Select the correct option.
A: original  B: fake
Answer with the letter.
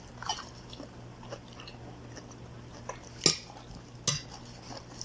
A